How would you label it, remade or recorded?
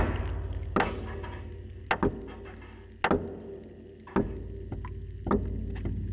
recorded